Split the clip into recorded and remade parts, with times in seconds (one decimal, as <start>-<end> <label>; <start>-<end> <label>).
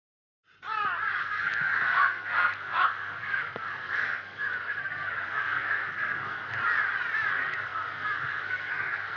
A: 0.0-1.2 recorded; 1.2-6.6 remade; 6.6-7.3 recorded; 7.3-9.2 remade